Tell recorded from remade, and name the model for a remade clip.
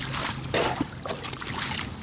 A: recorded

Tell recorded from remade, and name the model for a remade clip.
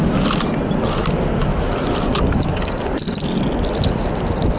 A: recorded